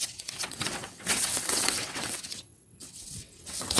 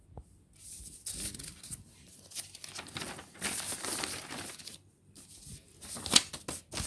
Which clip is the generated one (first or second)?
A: first